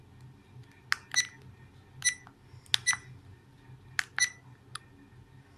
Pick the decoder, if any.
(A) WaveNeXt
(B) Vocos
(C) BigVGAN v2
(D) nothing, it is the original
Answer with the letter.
D